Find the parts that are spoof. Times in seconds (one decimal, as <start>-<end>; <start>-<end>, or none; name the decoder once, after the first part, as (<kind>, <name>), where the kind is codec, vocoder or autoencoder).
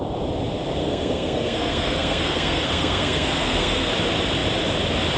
0.8-3.9 (codec, SNAC)